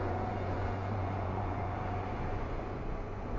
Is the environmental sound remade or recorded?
remade